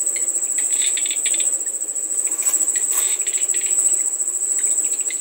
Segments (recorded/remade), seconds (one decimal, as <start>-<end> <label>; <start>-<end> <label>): 0.0-5.2 recorded